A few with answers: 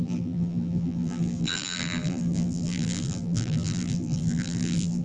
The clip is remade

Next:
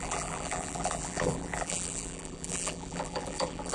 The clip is remade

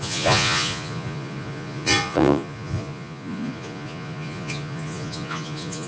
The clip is remade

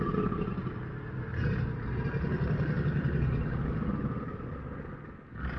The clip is recorded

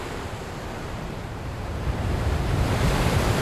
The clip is remade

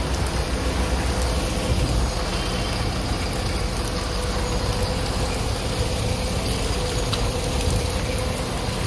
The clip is recorded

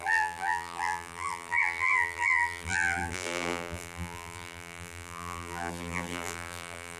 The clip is remade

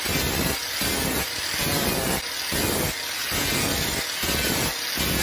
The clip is recorded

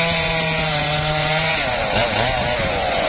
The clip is remade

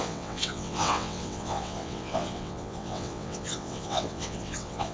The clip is remade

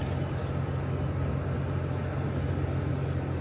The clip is recorded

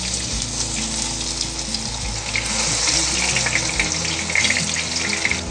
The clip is recorded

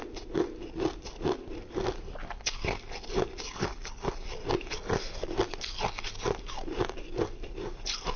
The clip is recorded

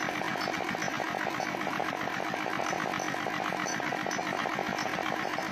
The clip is recorded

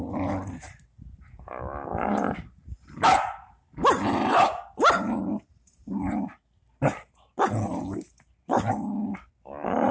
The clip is recorded